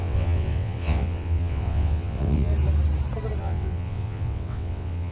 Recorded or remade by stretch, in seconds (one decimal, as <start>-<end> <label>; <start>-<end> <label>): 0.0-2.5 remade; 2.5-3.4 recorded; 3.4-5.1 remade